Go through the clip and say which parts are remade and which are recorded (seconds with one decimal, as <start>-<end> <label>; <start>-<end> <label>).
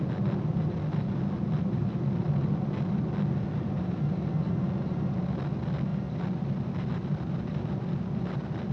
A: 0.0-8.7 recorded